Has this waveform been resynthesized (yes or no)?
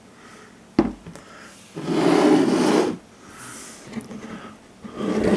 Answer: no